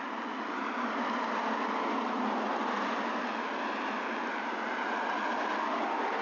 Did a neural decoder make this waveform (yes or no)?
no